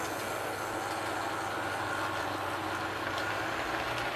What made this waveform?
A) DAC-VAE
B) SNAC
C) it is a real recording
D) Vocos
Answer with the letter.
C